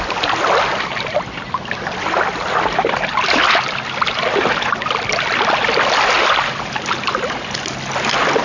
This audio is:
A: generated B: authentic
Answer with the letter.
B